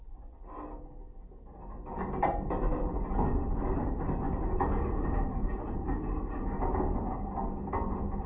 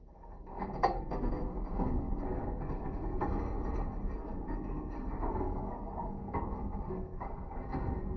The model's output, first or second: second